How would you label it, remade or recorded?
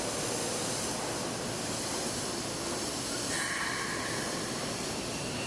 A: recorded